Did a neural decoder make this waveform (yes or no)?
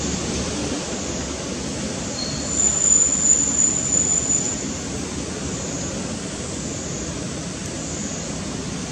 no